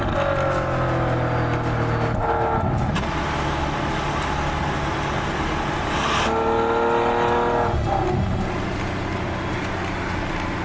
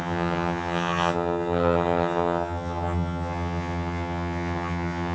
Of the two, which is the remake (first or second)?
second